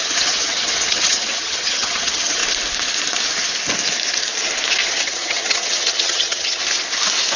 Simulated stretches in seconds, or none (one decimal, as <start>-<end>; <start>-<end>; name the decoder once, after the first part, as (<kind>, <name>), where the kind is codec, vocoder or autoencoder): 0.0-2.4 (vocoder, HiFi-GAN); 4.9-6.6